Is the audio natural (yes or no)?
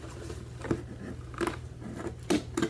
yes